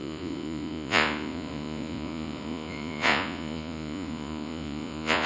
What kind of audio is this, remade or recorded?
remade